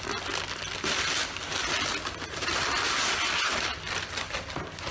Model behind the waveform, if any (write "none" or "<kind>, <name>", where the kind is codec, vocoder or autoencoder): none